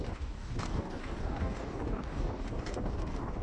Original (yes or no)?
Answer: no